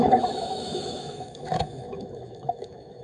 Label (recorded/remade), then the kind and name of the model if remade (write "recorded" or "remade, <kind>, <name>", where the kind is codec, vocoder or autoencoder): remade, autoencoder, DAC-VAE